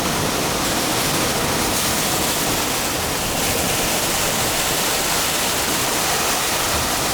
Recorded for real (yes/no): yes